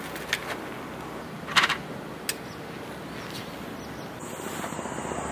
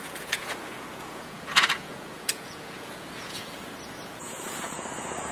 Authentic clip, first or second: first